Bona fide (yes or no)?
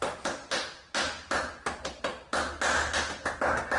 yes